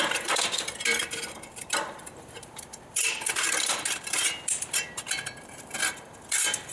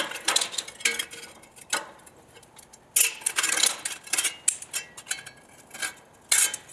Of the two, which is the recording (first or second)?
second